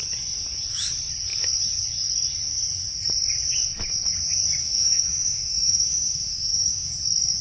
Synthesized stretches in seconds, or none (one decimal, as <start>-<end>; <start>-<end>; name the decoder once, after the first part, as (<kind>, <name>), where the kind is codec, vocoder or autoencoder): 4.6-6.9 (autoencoder, DAC-VAE)